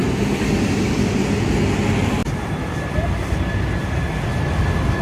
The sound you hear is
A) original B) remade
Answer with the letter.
A